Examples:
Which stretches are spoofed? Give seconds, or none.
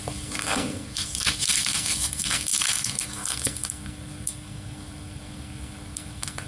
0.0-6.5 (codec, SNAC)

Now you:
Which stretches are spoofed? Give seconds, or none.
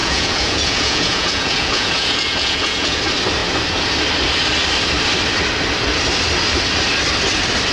0.0-3.0 (vocoder, Vocos)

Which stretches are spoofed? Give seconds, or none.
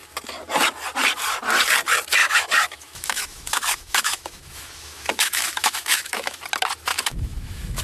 2.2-6.4 (autoencoder, DAC-VAE); 6.9-7.8